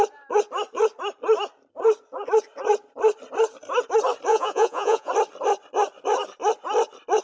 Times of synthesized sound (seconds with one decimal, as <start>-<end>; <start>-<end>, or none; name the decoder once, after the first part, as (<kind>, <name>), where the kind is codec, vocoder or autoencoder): 4.3-5.1 (vocoder, Vocos)